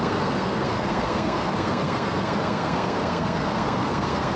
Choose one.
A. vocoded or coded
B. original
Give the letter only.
A